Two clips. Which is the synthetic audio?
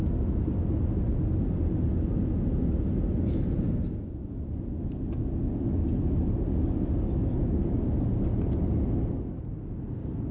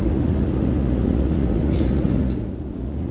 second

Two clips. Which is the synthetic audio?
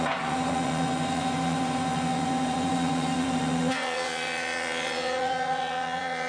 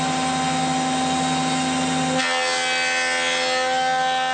first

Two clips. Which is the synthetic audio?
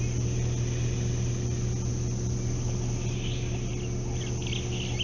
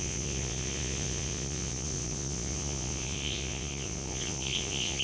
second